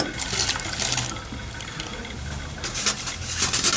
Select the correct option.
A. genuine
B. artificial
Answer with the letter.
A